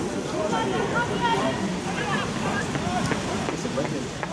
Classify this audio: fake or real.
real